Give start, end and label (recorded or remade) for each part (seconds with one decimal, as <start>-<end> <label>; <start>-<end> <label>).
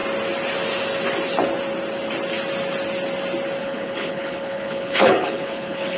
0.0-3.6 recorded; 3.6-6.0 remade